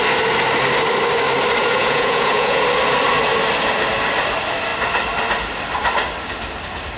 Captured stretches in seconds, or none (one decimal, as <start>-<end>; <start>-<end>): 0.0-1.6; 2.6-7.0